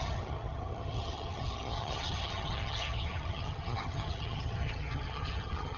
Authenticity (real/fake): fake